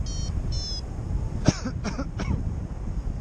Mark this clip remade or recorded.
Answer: recorded